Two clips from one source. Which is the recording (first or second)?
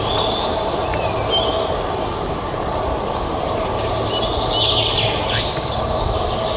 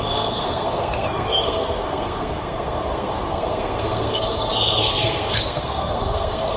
first